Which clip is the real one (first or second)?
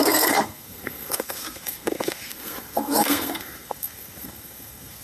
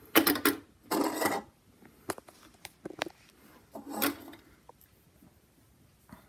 second